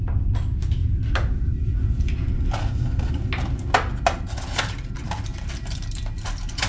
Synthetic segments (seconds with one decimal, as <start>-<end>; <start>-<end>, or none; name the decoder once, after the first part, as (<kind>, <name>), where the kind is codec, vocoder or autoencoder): 2.6-3.1 (codec, SNAC)